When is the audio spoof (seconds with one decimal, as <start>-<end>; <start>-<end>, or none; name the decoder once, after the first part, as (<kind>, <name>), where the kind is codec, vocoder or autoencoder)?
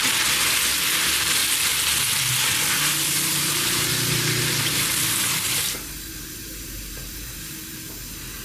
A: 5.6-7.9 (vocoder, BigVGAN v2)